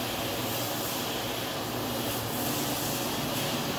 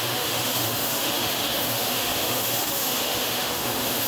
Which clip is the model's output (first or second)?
second